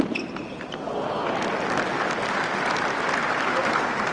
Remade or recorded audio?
recorded